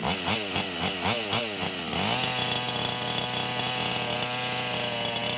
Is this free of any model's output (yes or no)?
yes